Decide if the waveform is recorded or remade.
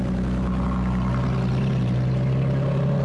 recorded